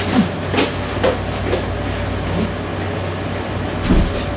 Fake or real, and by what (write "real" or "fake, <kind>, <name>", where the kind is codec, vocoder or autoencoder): real